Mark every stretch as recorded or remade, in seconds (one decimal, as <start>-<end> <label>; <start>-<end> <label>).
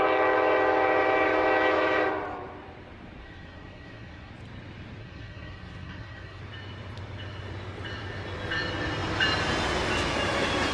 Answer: 0.0-3.2 recorded; 3.2-4.3 remade; 4.3-5.0 recorded; 5.0-6.4 remade; 6.4-10.7 recorded